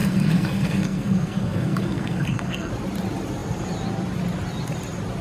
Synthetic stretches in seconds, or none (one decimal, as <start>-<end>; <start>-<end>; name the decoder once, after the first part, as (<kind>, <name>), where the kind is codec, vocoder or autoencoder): 0.0-2.7 (codec, SNAC)